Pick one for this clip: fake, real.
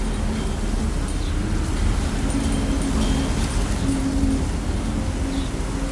real